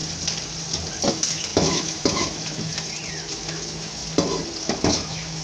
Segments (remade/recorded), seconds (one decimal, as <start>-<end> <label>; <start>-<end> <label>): 0.0-1.1 recorded; 1.1-2.7 remade; 2.7-3.3 recorded; 3.3-4.0 remade; 4.0-4.6 recorded; 4.6-5.4 remade